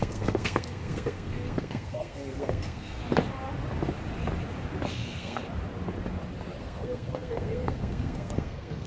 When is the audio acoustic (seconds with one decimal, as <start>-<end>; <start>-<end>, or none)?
3.0-4.9; 5.4-6.6